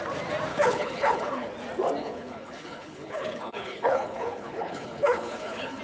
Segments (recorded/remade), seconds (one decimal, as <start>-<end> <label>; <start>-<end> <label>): 0.0-0.5 recorded; 0.5-1.5 remade; 1.5-2.0 recorded; 2.0-5.8 remade